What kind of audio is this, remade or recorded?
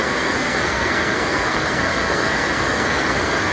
remade